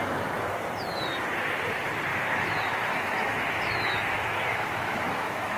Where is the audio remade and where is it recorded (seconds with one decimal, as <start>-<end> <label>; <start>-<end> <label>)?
0.0-2.1 recorded; 2.1-5.6 remade

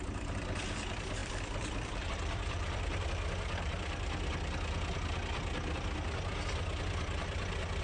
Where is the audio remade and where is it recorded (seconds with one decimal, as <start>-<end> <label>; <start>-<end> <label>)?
0.0-1.2 recorded; 1.2-3.0 remade; 3.0-7.8 recorded

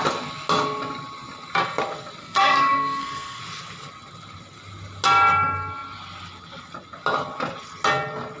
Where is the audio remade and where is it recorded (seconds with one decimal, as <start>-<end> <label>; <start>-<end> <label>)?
0.0-2.2 recorded; 2.2-3.4 remade; 3.4-8.4 recorded

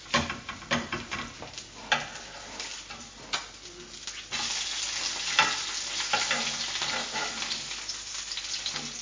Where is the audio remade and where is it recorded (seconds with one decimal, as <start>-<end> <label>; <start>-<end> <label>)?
0.0-2.7 recorded; 2.7-3.5 remade; 3.5-9.0 recorded

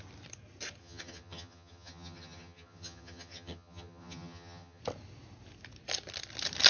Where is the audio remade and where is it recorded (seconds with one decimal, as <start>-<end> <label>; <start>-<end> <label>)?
0.0-0.8 recorded; 0.8-4.8 remade; 4.8-6.7 recorded

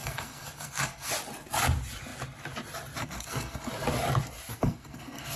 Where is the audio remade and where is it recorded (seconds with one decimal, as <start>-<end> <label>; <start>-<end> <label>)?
0.0-1.1 remade; 1.1-3.0 recorded; 3.0-3.7 remade; 3.7-4.5 recorded; 4.5-5.4 remade